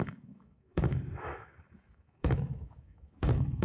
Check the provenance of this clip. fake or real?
fake